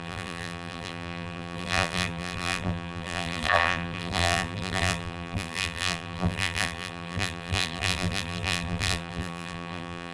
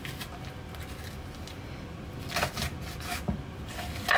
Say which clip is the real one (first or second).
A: second